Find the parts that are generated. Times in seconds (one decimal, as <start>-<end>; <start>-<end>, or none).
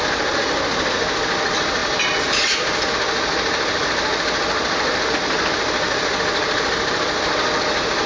none